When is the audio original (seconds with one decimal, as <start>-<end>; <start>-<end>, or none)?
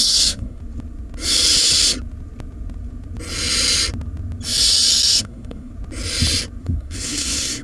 0.6-5.2; 5.7-6.6